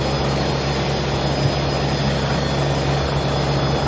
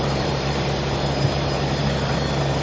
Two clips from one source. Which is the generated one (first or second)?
second